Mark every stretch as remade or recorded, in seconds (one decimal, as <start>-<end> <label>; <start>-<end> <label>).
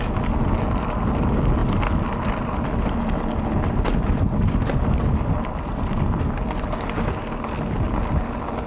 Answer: 0.0-8.7 recorded